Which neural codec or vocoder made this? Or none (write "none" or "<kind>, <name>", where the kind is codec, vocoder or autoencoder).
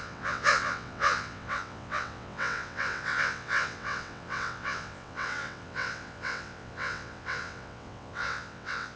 vocoder, WaveNeXt